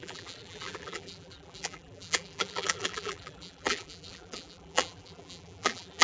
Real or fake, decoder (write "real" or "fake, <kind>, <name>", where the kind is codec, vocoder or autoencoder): fake, vocoder, BigVGAN v2